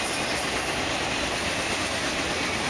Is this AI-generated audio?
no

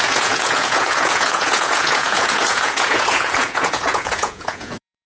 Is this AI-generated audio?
yes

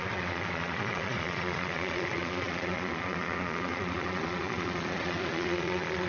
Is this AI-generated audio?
yes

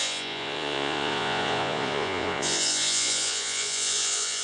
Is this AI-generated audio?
yes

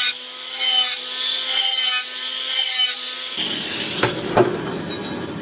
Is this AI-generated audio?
no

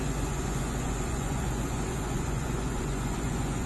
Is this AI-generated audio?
yes